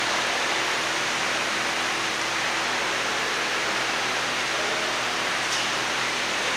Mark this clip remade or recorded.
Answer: remade